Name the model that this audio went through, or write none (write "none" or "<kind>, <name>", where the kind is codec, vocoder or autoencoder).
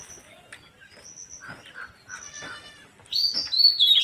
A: none